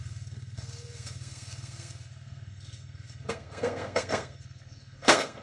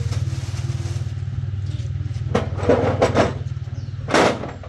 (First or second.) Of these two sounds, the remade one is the first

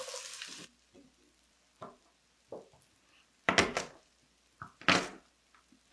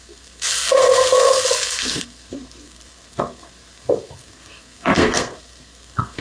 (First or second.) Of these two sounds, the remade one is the second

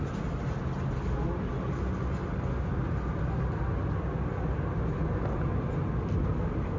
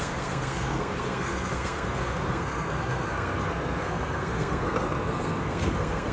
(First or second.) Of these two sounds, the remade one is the second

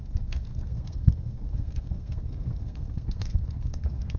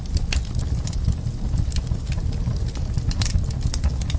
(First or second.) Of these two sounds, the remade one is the first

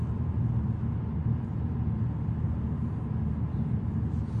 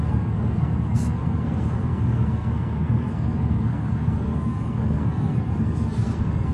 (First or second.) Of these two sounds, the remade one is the second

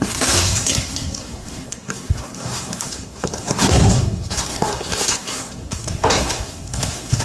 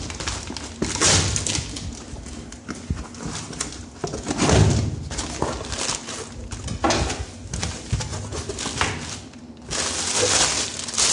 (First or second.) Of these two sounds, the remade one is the first